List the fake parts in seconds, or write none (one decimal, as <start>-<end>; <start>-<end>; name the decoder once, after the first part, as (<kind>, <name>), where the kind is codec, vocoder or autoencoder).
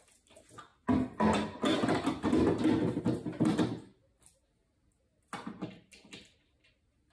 none